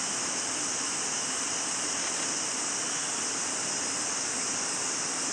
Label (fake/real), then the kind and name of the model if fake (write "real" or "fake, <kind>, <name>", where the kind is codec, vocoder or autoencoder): real